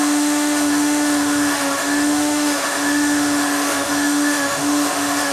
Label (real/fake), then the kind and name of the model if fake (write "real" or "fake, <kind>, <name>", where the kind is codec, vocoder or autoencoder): fake, autoencoder, DAC-VAE